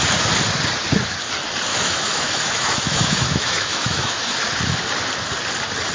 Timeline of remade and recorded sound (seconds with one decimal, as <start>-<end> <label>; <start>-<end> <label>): 0.0-1.7 recorded; 1.7-4.5 remade; 4.5-5.9 recorded